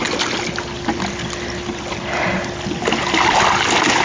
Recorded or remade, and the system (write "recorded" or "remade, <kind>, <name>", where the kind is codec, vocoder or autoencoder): recorded